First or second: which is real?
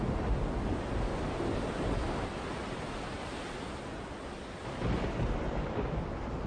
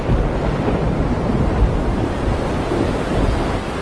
first